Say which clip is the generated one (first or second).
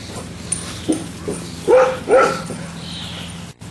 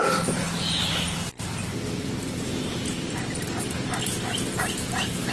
second